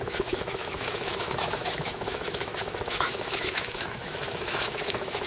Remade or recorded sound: remade